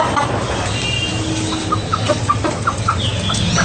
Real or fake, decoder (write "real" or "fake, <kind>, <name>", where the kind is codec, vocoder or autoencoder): real